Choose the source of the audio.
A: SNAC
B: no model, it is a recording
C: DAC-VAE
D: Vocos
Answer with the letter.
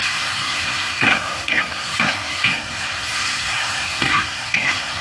A